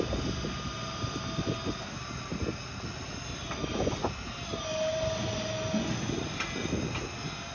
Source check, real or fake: real